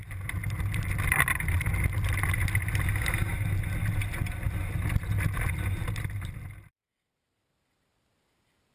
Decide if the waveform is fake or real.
real